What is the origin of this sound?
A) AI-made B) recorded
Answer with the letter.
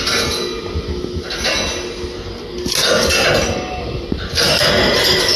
B